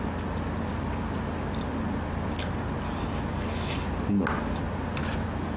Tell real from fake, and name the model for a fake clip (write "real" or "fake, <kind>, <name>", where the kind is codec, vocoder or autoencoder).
real